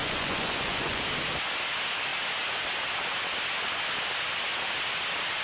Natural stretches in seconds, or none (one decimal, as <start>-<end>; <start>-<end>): 1.0-5.4